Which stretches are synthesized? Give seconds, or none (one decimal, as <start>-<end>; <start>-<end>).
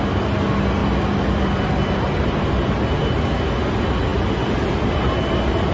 0.8-1.7